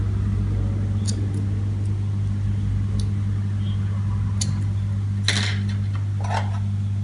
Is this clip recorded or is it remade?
recorded